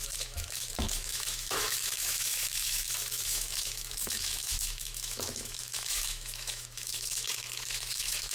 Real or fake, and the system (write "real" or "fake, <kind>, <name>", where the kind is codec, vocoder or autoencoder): fake, autoencoder, DAC-VAE